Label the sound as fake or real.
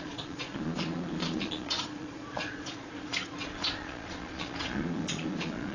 fake